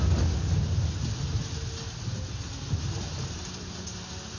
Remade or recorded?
recorded